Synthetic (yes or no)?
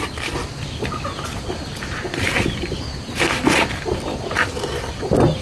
no